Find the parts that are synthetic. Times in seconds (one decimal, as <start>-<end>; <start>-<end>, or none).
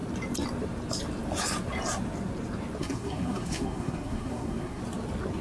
2.8-4.8